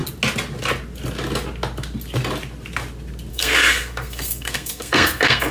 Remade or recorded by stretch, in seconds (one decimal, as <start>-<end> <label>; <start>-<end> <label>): 0.0-3.3 recorded; 3.3-5.5 remade